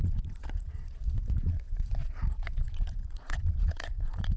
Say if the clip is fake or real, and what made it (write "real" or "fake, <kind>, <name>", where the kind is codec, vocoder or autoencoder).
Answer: fake, vocoder, Vocos